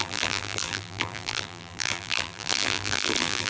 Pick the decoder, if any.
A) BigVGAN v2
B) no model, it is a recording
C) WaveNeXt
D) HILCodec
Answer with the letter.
A